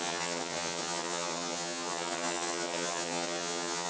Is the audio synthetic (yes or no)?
yes